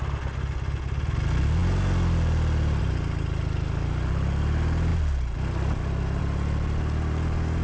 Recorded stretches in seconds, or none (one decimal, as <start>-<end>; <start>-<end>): 0.0-7.6